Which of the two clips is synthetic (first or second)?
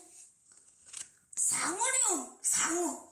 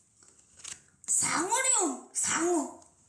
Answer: first